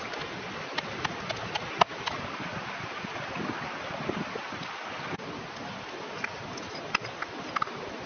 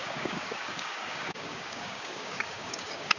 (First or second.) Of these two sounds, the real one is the first